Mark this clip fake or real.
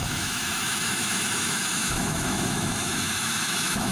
fake